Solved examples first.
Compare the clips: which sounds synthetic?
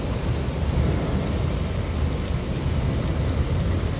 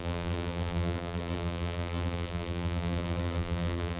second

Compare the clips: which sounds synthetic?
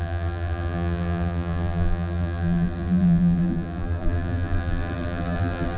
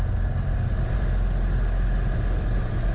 first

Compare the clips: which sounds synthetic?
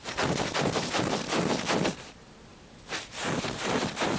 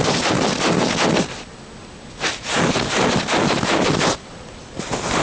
first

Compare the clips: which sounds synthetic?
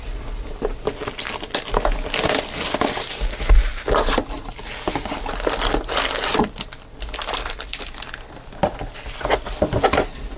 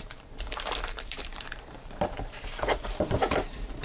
second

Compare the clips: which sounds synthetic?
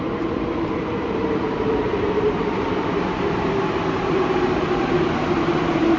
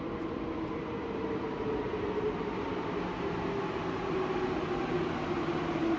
first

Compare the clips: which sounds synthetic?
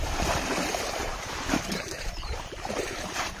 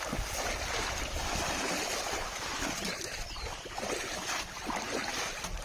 first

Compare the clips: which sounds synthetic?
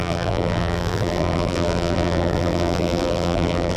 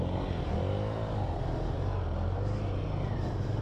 first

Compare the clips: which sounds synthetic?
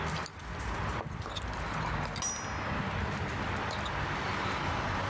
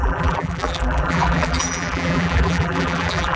second